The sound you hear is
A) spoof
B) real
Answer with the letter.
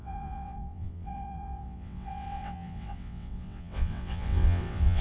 A